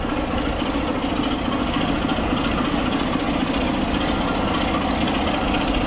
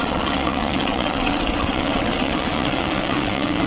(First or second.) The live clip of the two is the first